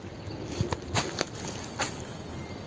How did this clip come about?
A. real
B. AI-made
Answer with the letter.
A